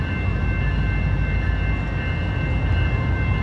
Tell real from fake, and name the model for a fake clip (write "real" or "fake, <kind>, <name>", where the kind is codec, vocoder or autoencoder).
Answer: real